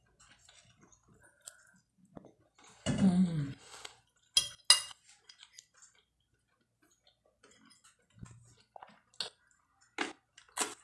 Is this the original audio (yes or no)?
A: yes